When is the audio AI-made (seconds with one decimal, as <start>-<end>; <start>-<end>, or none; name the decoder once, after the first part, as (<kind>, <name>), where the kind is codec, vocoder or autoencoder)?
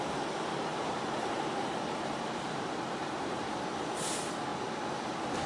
0.7-3.6 (vocoder, BigVGAN v2)